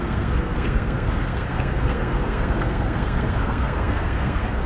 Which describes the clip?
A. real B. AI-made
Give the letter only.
B